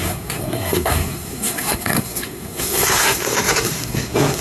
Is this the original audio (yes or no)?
no